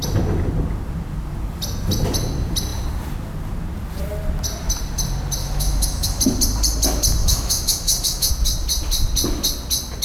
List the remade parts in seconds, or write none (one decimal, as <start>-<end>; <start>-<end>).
5.4-6.2; 7.2-8.3